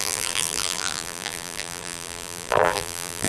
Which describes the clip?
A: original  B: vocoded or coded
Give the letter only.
B